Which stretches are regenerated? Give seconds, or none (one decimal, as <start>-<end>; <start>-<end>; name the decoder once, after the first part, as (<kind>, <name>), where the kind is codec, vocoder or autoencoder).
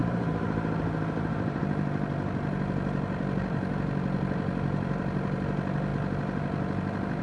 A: 0.0-1.6 (vocoder, BigVGAN v2)